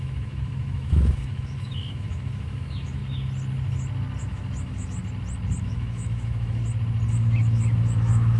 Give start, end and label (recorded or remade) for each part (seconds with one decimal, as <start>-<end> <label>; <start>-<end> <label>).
0.0-3.0 remade; 3.0-4.2 recorded; 4.2-5.0 remade; 5.0-5.6 recorded; 5.6-6.6 remade; 6.6-7.1 recorded; 7.1-8.4 remade